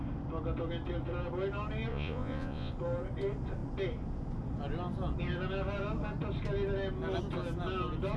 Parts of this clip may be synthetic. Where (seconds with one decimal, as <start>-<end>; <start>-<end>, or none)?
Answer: 1.9-2.7